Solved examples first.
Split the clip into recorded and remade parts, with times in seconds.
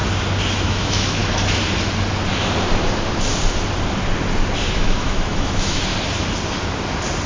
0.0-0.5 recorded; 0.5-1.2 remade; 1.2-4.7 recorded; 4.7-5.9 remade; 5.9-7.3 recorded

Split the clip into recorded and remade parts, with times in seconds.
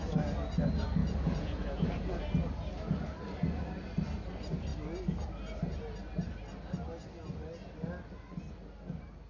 0.0-1.0 recorded; 1.0-2.2 remade; 2.2-9.3 recorded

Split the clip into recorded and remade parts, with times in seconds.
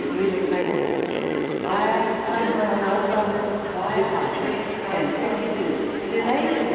0.0-0.6 recorded; 0.6-1.7 remade; 1.7-6.7 recorded